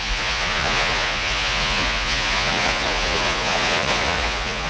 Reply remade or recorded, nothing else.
remade